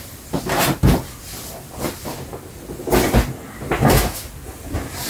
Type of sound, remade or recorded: recorded